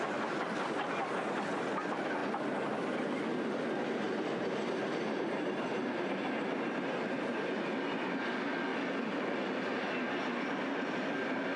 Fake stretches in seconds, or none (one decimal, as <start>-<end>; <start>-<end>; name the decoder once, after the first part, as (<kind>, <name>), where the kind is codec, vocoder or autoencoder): 2.2-4.0 (vocoder, BigVGAN v2); 8.7-9.7